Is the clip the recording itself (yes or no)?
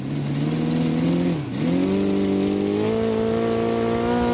yes